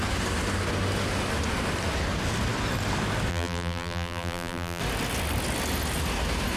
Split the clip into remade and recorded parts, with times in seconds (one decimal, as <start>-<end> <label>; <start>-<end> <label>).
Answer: 0.0-3.3 recorded; 3.3-4.8 remade; 4.8-6.6 recorded